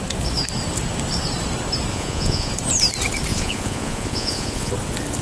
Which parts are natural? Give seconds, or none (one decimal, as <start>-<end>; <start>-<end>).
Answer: 0.0-1.9; 2.5-3.3; 4.7-5.2